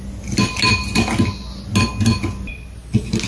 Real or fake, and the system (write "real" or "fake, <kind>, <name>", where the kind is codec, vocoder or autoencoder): real